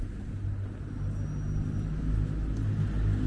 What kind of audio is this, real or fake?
real